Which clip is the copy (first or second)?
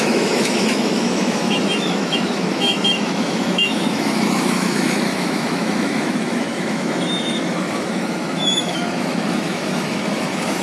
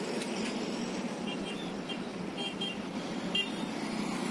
first